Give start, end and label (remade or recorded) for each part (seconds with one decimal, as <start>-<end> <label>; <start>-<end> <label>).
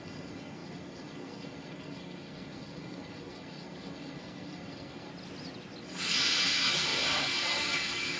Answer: 0.0-5.1 remade; 5.1-5.8 recorded; 5.8-8.2 remade